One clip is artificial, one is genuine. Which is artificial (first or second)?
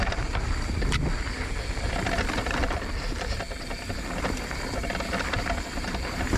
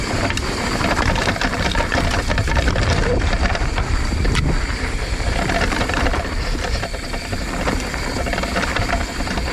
second